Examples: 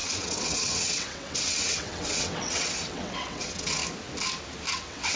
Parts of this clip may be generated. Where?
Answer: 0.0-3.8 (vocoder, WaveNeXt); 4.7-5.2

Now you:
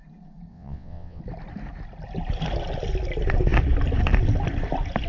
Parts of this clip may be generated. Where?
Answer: 0.5-1.2 (vocoder, WaveNeXt)

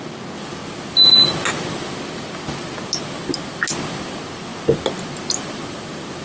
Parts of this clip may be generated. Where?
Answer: none

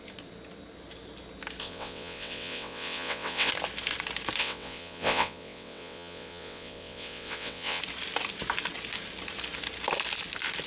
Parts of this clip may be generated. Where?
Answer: 1.6-3.5 (vocoder, WaveNeXt); 4.4-7.8

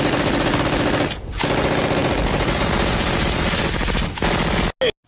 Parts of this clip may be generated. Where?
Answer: none

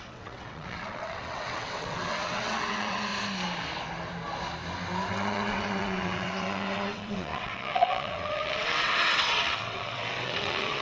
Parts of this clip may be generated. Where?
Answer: 0.0-3.1 (vocoder, WaveNeXt); 5.1-10.8

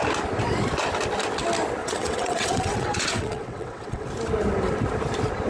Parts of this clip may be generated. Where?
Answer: 1.8-4.1 (vocoder, WaveNeXt)